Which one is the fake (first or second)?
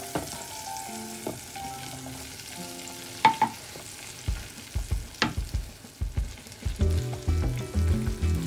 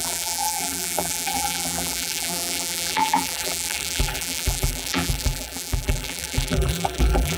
second